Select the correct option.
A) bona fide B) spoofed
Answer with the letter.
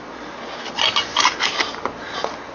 A